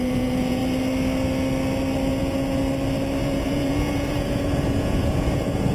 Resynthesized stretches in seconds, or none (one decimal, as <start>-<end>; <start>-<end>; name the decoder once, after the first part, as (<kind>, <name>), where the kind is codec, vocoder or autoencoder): 0.0-0.6 (vocoder, Vocos); 2.1-2.6; 3.2-5.7